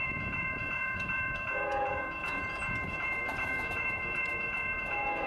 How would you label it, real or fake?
fake